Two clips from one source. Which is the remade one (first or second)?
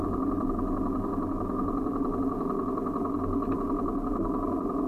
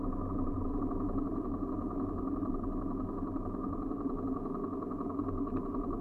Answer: second